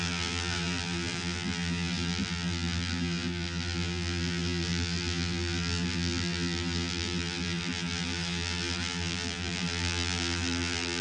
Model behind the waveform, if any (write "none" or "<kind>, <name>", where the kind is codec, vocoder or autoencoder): vocoder, BigVGAN v2